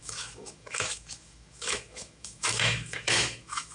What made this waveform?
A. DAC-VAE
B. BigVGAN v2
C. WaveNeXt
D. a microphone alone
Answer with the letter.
A